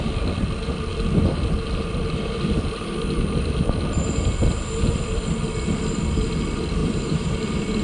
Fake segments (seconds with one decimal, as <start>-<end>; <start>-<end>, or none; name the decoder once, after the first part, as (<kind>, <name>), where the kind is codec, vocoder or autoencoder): 6.8-7.3 (vocoder, BigVGAN v2)